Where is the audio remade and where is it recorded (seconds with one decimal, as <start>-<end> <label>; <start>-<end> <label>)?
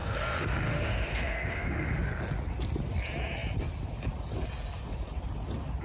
0.0-2.1 remade; 2.1-5.8 recorded